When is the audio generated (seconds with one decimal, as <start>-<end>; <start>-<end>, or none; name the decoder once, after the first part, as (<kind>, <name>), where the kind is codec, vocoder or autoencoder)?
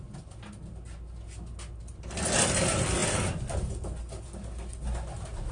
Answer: none